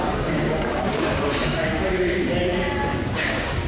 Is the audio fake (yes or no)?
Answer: yes